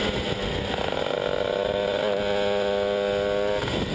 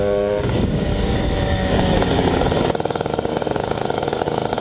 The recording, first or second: first